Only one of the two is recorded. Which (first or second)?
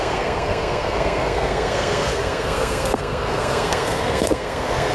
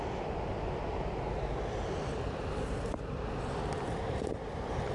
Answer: second